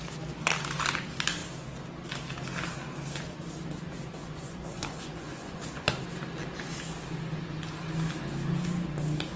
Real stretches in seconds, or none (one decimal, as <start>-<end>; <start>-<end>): 0.0-4.2; 5.9-9.4